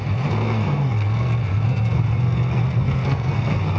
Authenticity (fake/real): fake